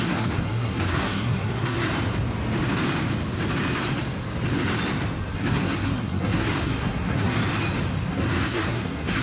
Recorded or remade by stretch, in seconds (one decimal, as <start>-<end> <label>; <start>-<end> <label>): 0.0-1.9 remade; 1.9-5.3 recorded; 5.3-7.4 remade; 7.4-8.1 recorded; 8.1-9.2 remade